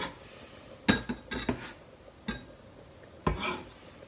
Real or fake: real